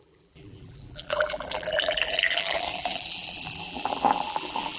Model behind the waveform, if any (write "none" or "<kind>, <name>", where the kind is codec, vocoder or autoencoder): vocoder, BigVGAN v2